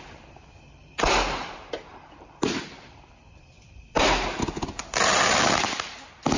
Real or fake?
real